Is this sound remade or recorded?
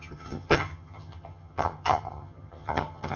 remade